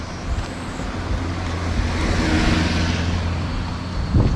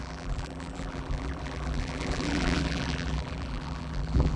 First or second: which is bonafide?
first